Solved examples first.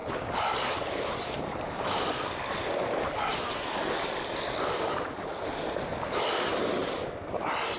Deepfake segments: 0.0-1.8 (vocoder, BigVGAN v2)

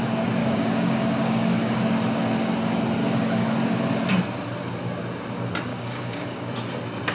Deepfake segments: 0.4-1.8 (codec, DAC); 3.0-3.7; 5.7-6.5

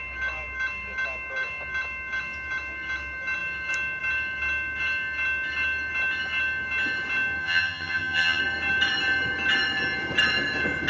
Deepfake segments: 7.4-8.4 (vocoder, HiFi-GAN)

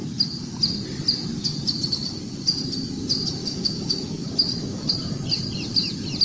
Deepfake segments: 3.4-4.9 (autoencoder, DAC-VAE)